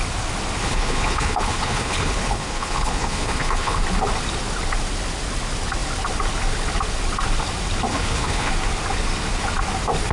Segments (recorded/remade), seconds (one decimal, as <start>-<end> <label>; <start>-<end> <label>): 0.0-0.6 recorded; 0.6-3.8 remade; 3.8-7.9 recorded; 7.9-8.5 remade; 8.5-10.1 recorded